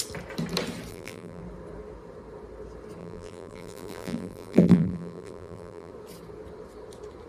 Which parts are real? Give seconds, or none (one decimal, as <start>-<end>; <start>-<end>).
0.0-0.9; 1.4-3.0; 5.9-7.3